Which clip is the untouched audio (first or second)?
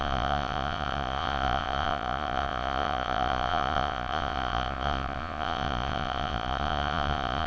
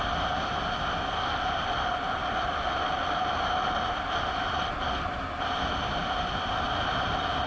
second